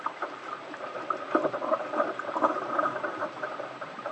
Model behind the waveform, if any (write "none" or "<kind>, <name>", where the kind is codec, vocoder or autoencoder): vocoder, BigVGAN v2